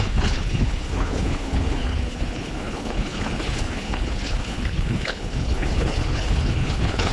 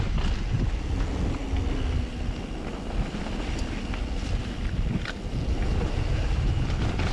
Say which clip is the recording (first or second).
second